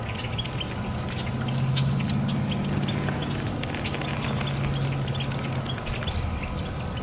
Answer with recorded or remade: recorded